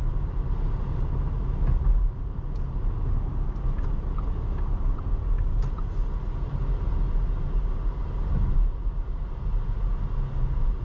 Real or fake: real